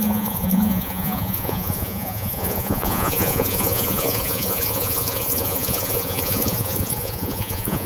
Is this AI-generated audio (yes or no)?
yes